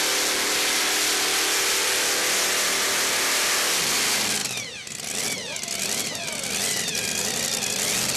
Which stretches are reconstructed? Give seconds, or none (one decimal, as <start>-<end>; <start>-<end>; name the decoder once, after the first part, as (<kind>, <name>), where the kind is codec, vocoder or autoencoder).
none